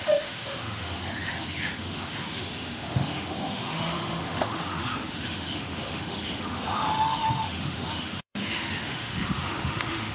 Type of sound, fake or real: fake